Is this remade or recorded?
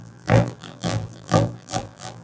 remade